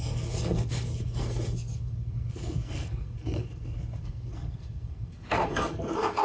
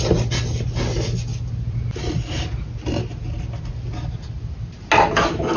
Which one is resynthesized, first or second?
first